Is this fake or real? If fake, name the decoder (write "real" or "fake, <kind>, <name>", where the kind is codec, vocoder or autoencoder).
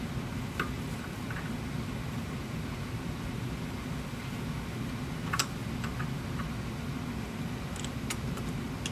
real